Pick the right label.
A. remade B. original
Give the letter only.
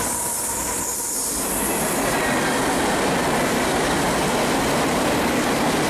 B